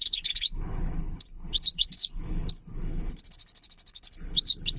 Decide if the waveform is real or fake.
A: fake